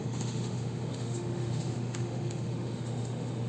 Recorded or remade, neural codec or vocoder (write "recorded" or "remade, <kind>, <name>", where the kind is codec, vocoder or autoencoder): remade, autoencoder, DAC-VAE